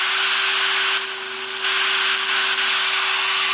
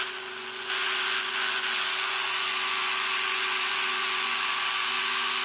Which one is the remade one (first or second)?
second